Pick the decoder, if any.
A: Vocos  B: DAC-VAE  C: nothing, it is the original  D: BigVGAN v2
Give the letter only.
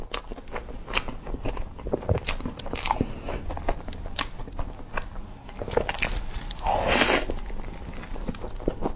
C